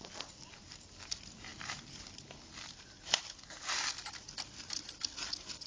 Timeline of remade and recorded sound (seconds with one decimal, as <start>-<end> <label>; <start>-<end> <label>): 0.0-5.7 recorded